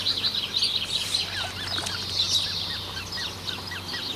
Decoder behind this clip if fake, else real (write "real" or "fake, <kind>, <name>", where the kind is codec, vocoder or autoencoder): real